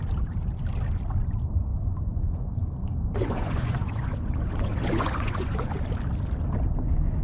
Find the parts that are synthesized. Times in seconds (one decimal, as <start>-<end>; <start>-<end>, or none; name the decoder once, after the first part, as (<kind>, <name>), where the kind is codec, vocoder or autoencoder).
1.7-5.8 (vocoder, Vocos)